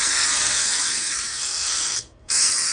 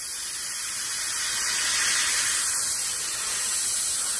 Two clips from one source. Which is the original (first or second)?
second